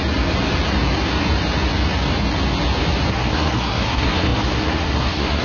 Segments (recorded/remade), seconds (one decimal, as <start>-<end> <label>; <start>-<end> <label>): 0.0-3.1 recorded; 3.1-5.4 remade